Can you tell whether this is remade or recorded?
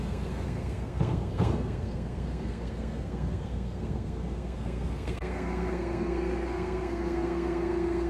remade